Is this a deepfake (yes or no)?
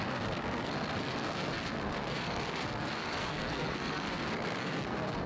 yes